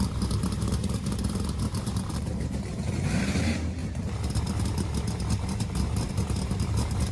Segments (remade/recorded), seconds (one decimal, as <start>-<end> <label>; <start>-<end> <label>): 0.0-3.8 remade; 3.8-6.1 recorded; 6.1-7.1 remade